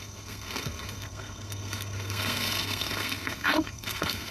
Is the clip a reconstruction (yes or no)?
yes